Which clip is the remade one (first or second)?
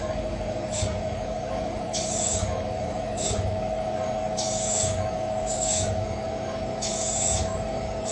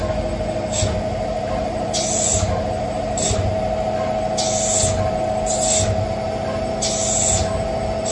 first